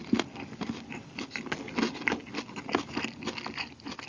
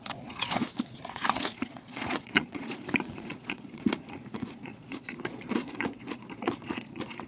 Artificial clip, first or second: second